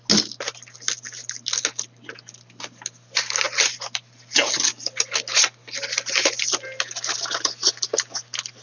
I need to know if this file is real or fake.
real